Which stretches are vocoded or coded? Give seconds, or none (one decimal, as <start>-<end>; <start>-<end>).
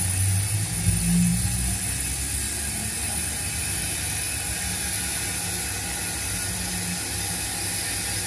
none